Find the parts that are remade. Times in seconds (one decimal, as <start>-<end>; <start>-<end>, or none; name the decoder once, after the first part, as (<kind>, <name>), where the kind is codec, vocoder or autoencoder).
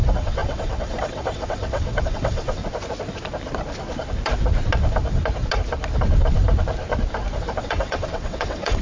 0.0-2.6 (vocoder, WaveNeXt); 7.6-8.8